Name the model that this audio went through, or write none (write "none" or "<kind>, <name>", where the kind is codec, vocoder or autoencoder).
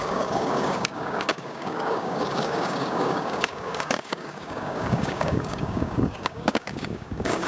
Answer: codec, DAC